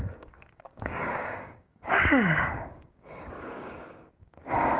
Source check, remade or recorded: remade